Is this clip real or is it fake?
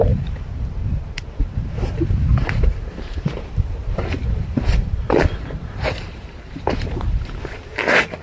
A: fake